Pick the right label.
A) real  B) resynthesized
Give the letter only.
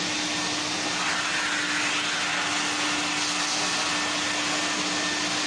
A